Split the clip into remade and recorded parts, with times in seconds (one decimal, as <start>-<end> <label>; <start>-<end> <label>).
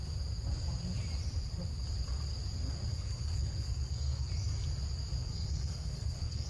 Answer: 0.0-2.9 recorded; 2.9-4.3 remade; 4.3-5.2 recorded; 5.2-6.5 remade